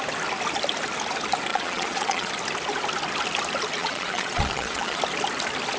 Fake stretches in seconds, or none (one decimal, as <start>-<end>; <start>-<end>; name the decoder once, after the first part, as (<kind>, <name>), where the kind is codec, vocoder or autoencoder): 1.5-2.3 (vocoder, Vocos); 3.8-5.0